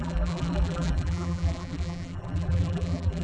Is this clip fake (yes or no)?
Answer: yes